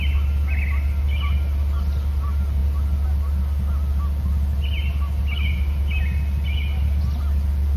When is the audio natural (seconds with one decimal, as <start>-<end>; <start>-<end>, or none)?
0.0-7.8